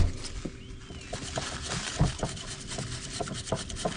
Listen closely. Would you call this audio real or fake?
real